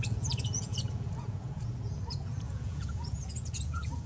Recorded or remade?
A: remade